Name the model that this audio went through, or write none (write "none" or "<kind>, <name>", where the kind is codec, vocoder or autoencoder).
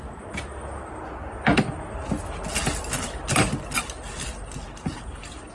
none